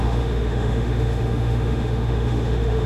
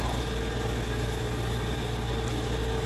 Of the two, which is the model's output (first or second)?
first